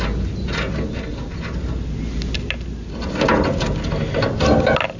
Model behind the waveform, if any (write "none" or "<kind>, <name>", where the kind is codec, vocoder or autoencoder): none